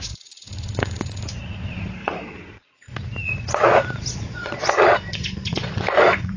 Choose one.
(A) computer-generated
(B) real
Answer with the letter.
A